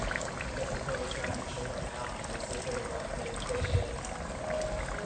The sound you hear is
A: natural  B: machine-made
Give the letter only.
A